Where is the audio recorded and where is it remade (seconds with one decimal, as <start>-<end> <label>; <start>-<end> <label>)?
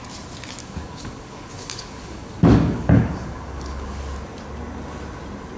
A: 0.0-0.6 recorded; 0.6-4.0 remade; 4.0-5.6 recorded